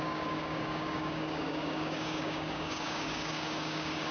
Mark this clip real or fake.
fake